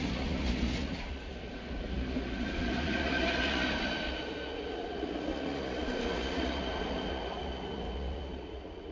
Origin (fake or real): fake